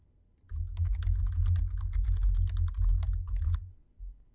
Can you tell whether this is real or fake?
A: real